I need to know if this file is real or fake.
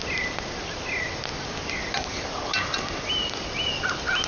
real